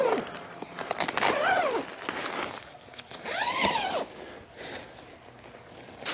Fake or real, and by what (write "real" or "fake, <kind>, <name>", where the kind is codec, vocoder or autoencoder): real